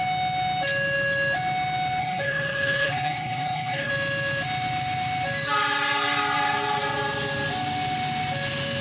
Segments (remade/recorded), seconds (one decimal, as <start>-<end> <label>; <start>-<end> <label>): 0.0-2.0 recorded; 2.0-3.9 remade; 3.9-8.8 recorded